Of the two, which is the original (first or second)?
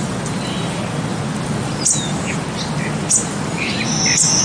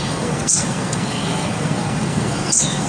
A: first